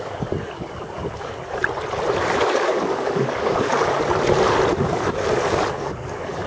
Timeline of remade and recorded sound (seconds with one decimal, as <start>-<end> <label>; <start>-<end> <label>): 0.0-1.6 remade; 1.6-2.2 recorded; 2.2-3.7 remade; 3.7-4.8 recorded; 4.8-6.5 remade